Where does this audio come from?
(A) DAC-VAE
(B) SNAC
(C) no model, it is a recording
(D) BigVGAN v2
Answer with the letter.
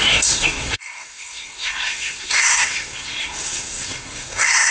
B